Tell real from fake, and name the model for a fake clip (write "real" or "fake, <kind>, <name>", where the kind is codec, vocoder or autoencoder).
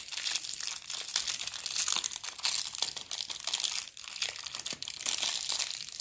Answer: real